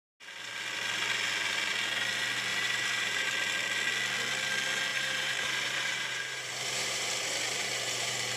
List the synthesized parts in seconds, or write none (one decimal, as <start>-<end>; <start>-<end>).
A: 2.5-3.3; 4.9-8.4